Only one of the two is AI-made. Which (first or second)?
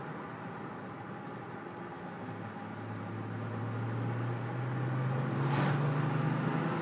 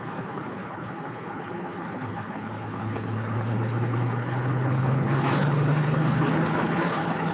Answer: second